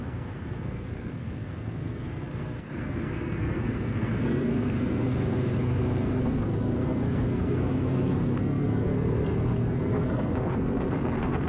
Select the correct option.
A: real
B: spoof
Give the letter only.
B